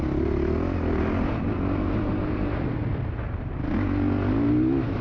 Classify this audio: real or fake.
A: real